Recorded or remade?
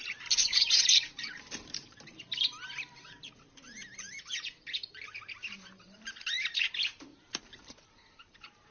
remade